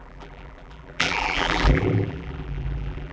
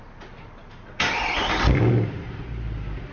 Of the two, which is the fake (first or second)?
first